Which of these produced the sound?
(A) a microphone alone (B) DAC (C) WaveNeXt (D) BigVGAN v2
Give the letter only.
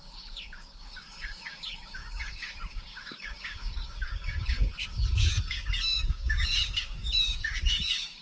B